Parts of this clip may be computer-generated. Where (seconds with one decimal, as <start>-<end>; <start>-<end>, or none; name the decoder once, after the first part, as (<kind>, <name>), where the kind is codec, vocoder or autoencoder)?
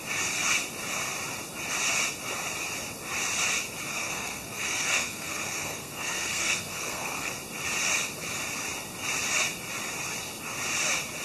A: 3.9-7.3 (codec, SNAC)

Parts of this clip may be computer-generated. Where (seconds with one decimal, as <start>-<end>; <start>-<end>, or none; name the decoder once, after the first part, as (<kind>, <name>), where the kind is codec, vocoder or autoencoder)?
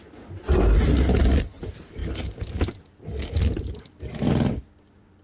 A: none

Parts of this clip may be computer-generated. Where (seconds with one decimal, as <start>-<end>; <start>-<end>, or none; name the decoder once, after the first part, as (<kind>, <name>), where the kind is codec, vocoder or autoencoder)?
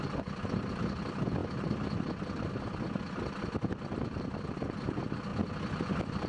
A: none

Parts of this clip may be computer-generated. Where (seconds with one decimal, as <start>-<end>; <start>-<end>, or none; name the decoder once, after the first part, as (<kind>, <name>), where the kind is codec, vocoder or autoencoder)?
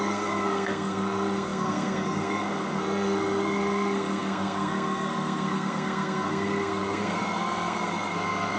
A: 0.0-8.6 (codec, SNAC)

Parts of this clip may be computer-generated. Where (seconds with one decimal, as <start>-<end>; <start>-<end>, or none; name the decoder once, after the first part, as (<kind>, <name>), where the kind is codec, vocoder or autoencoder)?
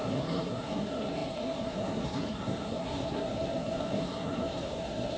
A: 0.0-5.2 (codec, SNAC)